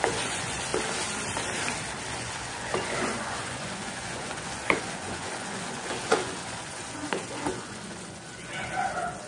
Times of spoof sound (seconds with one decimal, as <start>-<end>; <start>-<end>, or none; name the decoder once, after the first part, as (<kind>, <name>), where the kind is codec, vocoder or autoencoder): 0.0-0.7 (vocoder, Vocos); 2.1-9.3